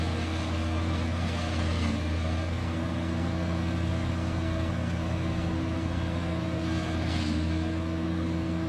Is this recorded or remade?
remade